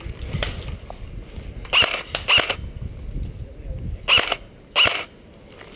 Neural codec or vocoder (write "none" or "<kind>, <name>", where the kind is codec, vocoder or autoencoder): none